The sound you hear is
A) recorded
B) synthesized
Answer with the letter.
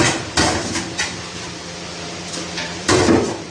B